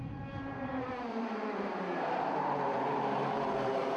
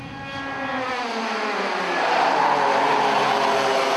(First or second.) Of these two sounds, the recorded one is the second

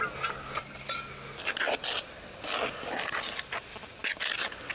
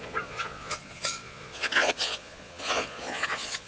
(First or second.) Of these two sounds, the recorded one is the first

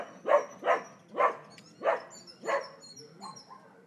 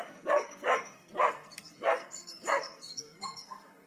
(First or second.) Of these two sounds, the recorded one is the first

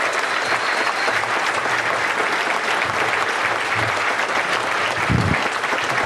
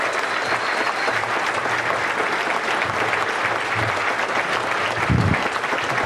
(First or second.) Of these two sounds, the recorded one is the second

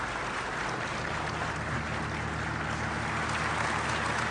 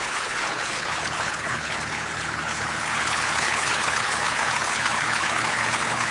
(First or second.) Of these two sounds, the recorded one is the first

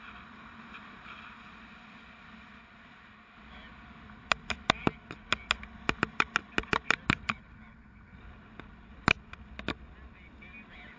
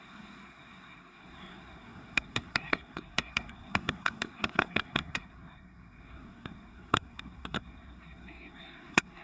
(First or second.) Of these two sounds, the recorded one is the first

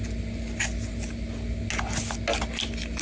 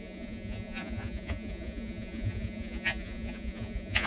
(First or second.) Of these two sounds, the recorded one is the first